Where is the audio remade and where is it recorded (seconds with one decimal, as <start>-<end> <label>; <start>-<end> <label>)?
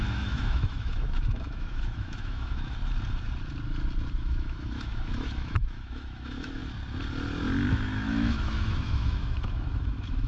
0.0-2.8 remade; 2.8-4.1 recorded; 4.1-6.6 remade; 6.6-7.7 recorded; 7.7-10.3 remade